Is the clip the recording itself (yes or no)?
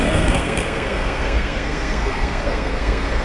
no